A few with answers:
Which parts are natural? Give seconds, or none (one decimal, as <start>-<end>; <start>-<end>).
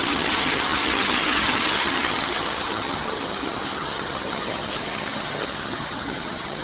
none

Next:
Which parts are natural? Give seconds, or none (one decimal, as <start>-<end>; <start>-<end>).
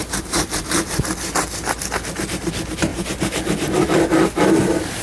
1.0-2.9; 3.4-5.0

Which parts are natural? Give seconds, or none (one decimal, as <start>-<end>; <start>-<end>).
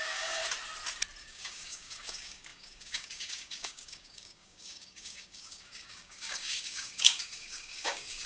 0.4-1.2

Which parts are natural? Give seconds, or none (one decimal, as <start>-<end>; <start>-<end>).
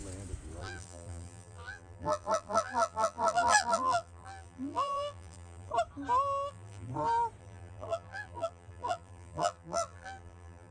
0.0-0.6; 5.7-6.5; 6.9-7.4